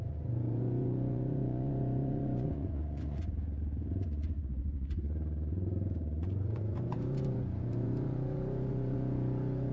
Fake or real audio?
fake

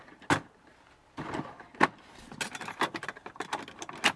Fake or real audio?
real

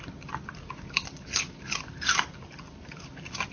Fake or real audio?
real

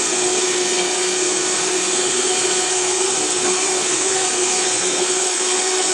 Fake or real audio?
fake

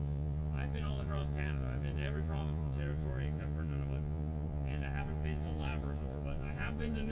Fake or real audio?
fake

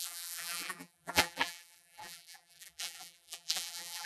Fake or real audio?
fake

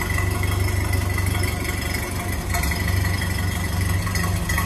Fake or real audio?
real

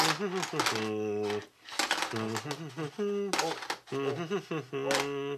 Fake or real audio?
real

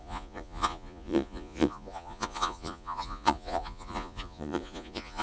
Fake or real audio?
fake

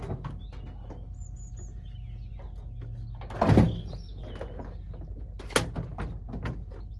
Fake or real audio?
real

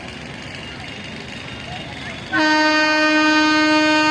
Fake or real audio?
real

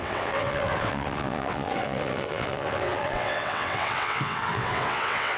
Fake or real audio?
fake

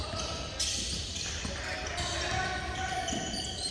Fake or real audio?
real